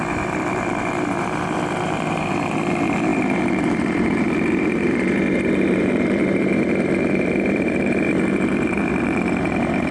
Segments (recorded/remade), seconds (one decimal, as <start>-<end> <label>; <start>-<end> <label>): 0.0-9.9 remade